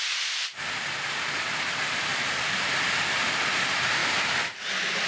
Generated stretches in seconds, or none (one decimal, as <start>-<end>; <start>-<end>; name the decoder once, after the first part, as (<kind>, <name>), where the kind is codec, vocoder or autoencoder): 2.1-3.2 (vocoder, BigVGAN v2); 4.0-4.5